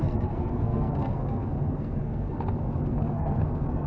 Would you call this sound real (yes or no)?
no